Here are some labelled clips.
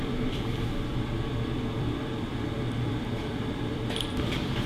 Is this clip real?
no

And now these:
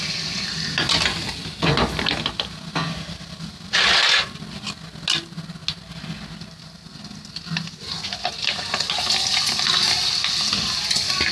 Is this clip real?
yes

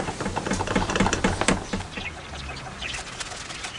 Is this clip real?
yes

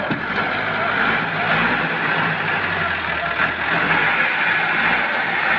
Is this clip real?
yes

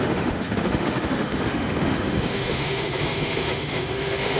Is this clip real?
no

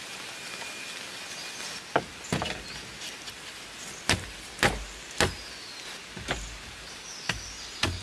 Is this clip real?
yes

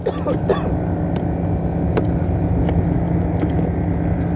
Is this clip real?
yes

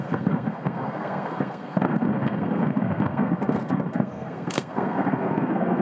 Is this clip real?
no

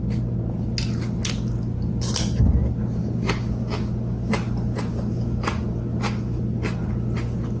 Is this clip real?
yes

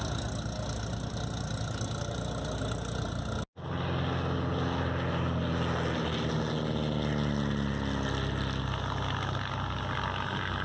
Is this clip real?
yes